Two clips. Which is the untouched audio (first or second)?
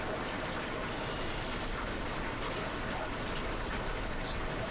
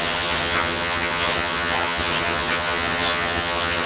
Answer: first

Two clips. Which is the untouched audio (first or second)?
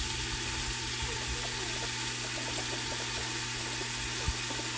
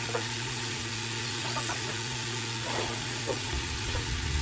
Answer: first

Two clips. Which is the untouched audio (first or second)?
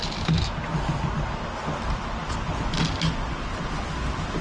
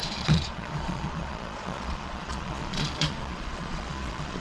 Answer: first